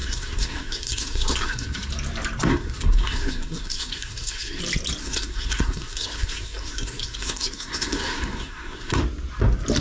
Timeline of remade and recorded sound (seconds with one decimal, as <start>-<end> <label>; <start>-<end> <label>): 0.0-1.9 remade; 1.9-2.5 recorded; 2.5-4.6 remade; 4.6-5.0 recorded; 5.0-9.0 remade; 9.0-9.8 recorded